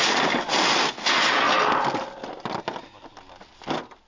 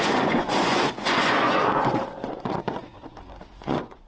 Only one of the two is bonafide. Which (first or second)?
first